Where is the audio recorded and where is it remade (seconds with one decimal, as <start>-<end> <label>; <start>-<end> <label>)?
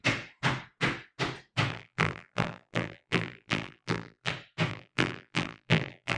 0.0-1.7 recorded; 1.7-4.3 remade; 4.3-4.7 recorded; 4.7-6.2 remade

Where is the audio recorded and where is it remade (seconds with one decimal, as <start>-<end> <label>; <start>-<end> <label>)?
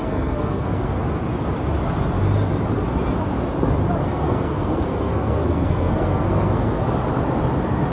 0.0-1.0 remade; 1.0-4.0 recorded; 4.0-6.8 remade; 6.8-7.9 recorded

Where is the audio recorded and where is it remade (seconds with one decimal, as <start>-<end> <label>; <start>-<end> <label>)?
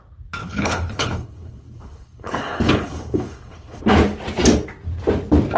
0.0-0.4 recorded; 0.4-3.8 remade; 3.8-5.6 recorded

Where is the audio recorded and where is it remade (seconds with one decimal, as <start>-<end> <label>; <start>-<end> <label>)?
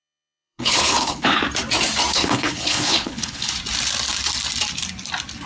0.0-1.4 remade; 1.4-2.1 recorded; 2.1-3.5 remade; 3.5-5.5 recorded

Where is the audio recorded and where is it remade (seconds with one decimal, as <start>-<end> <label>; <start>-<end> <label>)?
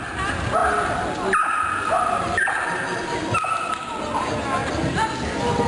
0.0-0.6 recorded; 0.6-4.0 remade; 4.0-4.6 recorded; 4.6-5.7 remade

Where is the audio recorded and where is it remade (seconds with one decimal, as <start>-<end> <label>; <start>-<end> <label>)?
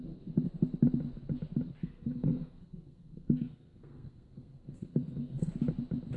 0.0-1.8 recorded; 1.8-5.5 remade; 5.5-6.2 recorded